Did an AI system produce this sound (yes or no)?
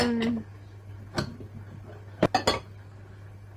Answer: no